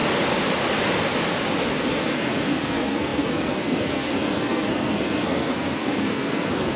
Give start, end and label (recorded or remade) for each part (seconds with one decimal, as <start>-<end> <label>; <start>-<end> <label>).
0.0-1.8 recorded; 1.8-6.8 remade